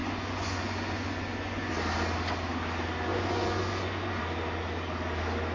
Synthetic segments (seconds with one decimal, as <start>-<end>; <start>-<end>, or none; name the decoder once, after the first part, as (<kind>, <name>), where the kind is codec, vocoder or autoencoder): 0.0-1.7 (vocoder, Vocos); 3.1-4.2